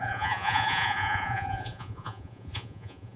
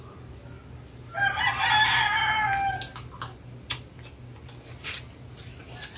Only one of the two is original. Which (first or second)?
second